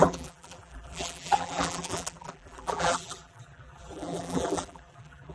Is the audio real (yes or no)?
no